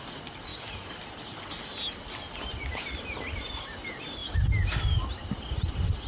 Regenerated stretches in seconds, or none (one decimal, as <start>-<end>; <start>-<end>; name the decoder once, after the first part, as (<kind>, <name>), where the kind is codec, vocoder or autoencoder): none